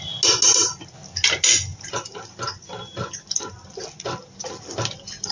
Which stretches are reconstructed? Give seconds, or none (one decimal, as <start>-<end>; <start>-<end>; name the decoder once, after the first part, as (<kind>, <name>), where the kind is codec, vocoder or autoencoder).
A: none